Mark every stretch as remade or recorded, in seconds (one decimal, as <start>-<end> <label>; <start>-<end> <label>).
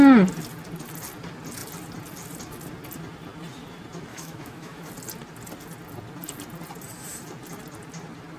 0.0-4.1 recorded; 4.1-4.9 remade; 4.9-8.4 recorded